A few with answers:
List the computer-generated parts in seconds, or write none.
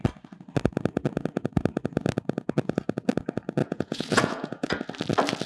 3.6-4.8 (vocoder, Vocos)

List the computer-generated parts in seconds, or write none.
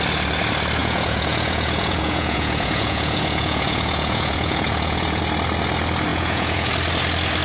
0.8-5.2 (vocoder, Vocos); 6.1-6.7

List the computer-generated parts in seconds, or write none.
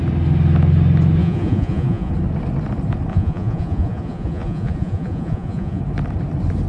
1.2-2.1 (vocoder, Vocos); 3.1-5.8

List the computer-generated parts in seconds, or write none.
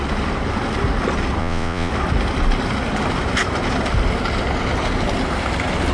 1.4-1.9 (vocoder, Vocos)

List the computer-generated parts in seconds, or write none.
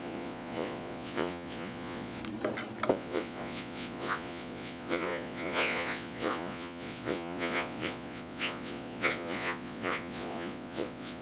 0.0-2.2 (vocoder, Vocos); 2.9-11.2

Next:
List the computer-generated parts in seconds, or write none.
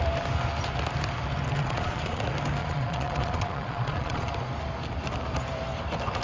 1.6-2.2 (vocoder, Vocos); 2.6-4.3